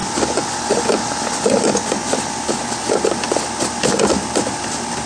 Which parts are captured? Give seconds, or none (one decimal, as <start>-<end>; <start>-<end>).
0.0-5.1